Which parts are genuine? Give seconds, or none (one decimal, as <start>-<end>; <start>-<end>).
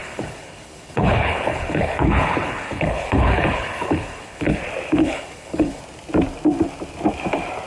4.6-5.0; 5.8-7.7